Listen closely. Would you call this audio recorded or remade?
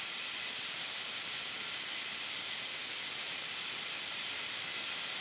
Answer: recorded